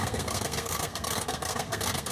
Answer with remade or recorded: remade